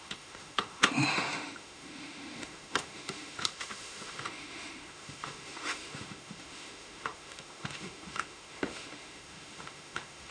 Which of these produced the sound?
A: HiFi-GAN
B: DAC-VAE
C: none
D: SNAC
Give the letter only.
B